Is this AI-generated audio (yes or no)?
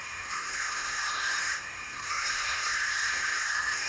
yes